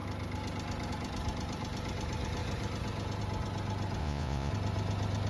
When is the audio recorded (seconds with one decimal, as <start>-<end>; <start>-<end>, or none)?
0.0-4.0; 4.5-5.3